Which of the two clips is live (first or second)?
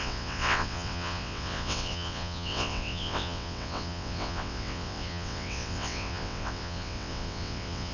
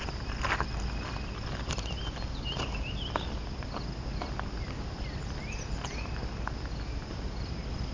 second